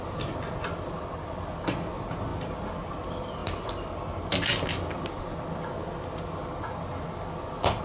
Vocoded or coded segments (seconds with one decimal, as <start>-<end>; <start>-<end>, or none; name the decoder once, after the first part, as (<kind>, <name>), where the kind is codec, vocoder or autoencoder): none